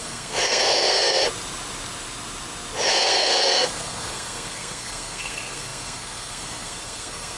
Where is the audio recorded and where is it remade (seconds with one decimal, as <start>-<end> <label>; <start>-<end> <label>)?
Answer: 0.0-1.2 remade; 1.2-2.9 recorded; 2.9-7.4 remade